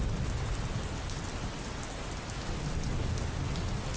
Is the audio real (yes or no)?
yes